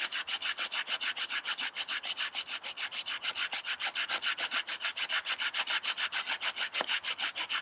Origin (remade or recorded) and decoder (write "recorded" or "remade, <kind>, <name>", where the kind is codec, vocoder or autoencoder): recorded